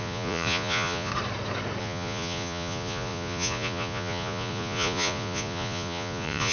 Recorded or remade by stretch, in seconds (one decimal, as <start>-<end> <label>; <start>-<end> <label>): 0.0-1.1 remade; 1.1-1.8 recorded; 1.8-6.5 remade